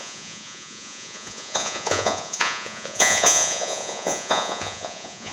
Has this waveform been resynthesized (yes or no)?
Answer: yes